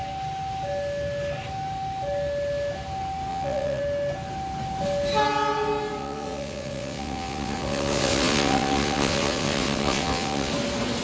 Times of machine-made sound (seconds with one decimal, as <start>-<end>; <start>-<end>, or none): 3.3-3.8; 6.0-10.5